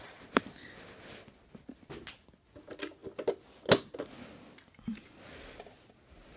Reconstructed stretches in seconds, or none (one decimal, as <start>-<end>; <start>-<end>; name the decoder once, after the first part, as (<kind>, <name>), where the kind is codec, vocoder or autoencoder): none